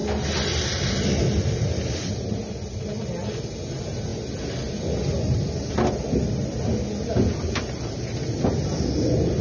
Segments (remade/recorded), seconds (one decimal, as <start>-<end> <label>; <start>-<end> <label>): 0.0-9.4 recorded